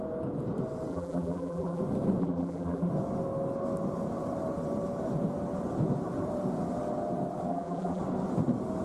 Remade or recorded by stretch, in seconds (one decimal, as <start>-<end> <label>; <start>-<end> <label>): 0.0-0.9 recorded; 0.9-1.8 remade; 1.8-2.2 recorded; 2.2-2.9 remade; 2.9-7.5 recorded; 7.5-8.0 remade; 8.0-8.8 recorded